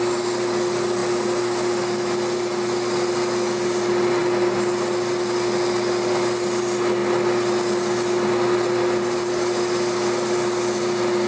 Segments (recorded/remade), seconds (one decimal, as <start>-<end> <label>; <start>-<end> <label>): 0.0-11.3 recorded